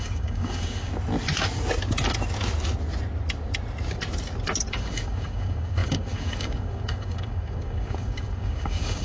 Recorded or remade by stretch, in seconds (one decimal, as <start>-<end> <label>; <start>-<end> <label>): 0.0-0.9 remade; 0.9-4.7 recorded; 4.7-9.0 remade